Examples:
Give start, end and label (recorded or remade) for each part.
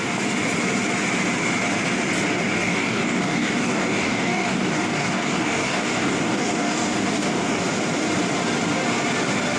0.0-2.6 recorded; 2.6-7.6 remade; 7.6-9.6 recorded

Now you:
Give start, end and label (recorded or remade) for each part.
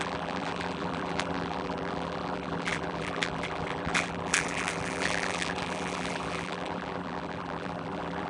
0.0-8.3 remade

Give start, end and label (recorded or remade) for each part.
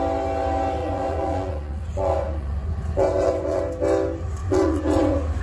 0.0-0.8 recorded; 0.8-3.6 remade; 3.6-4.4 recorded; 4.4-5.4 remade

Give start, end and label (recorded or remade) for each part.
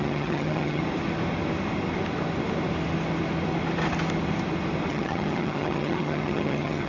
0.0-0.8 remade; 0.8-4.9 recorded; 4.9-6.9 remade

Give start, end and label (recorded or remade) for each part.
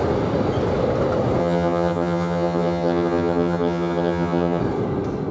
0.0-1.4 recorded; 1.4-4.6 remade; 4.6-5.3 recorded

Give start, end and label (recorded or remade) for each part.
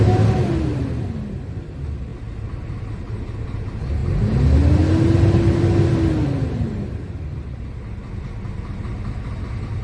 0.0-9.8 recorded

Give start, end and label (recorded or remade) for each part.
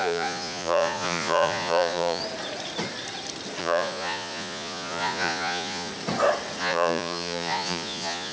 0.0-2.2 remade; 2.2-3.6 recorded; 3.6-5.9 remade; 5.9-6.6 recorded; 6.6-8.3 remade